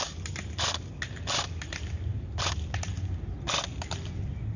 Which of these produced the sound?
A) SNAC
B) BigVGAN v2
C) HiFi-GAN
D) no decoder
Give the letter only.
D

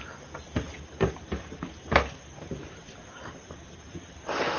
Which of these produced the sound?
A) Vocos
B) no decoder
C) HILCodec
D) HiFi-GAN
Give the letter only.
B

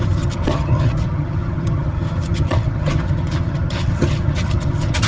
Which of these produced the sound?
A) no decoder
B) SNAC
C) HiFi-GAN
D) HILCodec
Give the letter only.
C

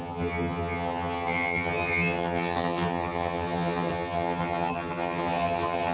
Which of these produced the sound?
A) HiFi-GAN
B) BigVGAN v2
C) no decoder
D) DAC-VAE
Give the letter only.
A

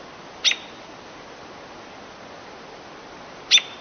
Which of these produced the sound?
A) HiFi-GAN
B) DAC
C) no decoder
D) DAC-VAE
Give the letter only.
C